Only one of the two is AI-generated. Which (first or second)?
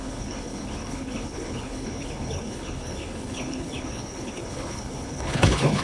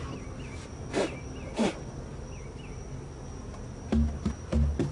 first